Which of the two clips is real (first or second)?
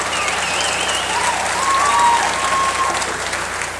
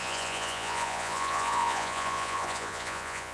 first